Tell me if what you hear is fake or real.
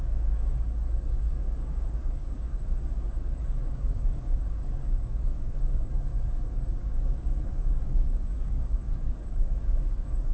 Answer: fake